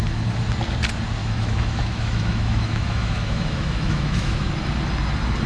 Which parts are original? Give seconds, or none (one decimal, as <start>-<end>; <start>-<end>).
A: 0.0-1.2; 4.5-5.5